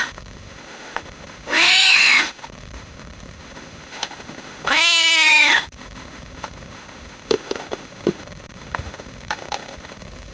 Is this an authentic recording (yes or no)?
no